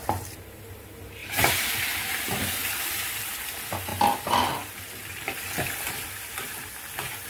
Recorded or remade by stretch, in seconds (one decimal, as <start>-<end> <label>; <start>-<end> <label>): 0.0-1.2 recorded; 1.2-3.2 remade; 3.2-7.3 recorded